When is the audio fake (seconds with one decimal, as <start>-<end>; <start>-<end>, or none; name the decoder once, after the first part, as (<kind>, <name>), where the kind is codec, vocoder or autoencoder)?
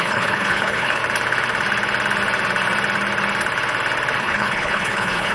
0.0-1.0 (codec, HILCodec); 4.2-5.3